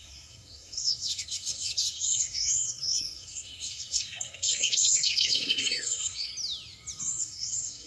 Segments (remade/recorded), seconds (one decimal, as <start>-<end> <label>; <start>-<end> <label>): 0.0-6.3 remade; 6.3-7.0 recorded; 7.0-7.9 remade